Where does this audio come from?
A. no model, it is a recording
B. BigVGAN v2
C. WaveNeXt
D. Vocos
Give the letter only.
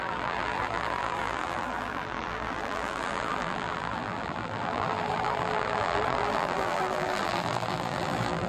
B